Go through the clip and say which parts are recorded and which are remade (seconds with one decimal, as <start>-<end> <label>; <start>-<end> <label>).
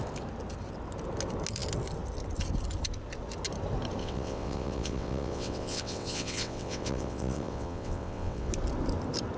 0.0-4.0 recorded; 4.0-8.5 remade; 8.5-9.4 recorded